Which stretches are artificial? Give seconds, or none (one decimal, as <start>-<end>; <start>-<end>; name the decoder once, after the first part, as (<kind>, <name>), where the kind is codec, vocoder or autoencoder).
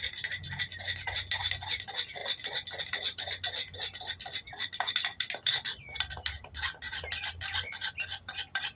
none